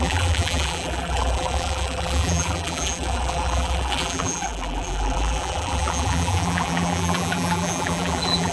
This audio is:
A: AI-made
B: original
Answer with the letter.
A